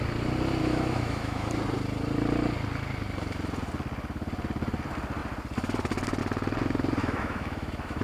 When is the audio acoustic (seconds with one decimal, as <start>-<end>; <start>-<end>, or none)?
0.0-0.6; 1.5-7.0